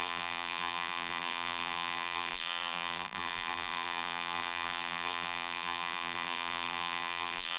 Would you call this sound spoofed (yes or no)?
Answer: yes